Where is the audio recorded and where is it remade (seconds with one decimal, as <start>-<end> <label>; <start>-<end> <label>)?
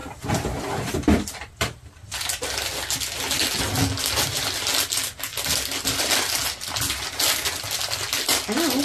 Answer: 0.0-8.8 recorded